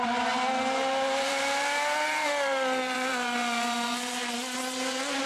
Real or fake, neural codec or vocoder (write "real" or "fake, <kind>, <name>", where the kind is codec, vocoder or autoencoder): fake, vocoder, BigVGAN v2